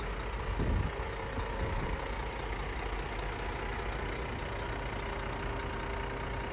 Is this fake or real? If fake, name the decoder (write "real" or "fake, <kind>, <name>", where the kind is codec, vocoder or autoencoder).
real